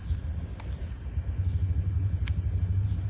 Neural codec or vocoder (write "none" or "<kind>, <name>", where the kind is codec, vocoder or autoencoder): none